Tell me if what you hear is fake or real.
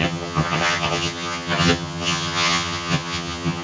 fake